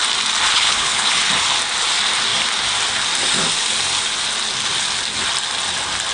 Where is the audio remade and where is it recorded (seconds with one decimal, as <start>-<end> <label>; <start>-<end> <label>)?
0.0-0.5 recorded; 0.5-1.1 remade; 1.1-6.1 recorded